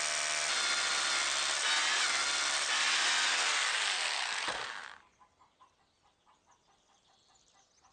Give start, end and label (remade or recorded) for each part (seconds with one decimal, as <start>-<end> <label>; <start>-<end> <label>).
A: 0.0-7.9 recorded